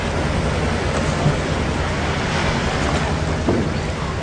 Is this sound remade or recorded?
recorded